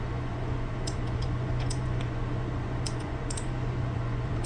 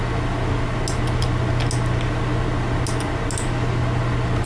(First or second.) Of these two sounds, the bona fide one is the second